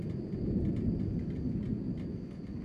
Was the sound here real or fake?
real